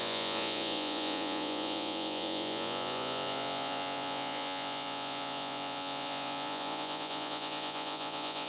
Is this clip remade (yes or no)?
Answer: yes